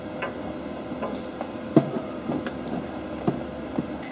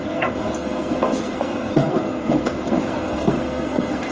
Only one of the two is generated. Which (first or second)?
second